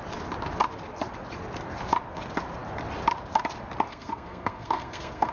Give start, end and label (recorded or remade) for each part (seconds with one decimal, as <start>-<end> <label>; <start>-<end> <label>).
0.0-3.9 recorded; 3.9-5.3 remade